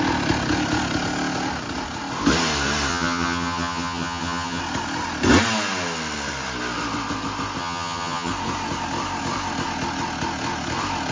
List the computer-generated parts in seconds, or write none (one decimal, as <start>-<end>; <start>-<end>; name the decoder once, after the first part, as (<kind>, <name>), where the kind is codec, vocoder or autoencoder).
2.9-4.6 (vocoder, HiFi-GAN); 7.6-8.3